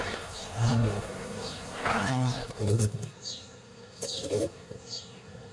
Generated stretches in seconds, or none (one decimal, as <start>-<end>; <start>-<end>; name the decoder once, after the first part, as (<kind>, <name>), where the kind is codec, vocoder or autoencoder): 0.0-5.5 (codec, SNAC)